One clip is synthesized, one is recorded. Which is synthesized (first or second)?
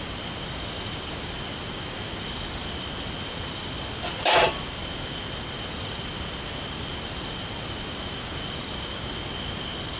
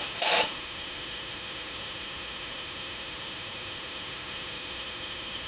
second